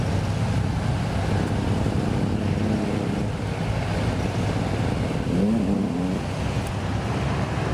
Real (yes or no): yes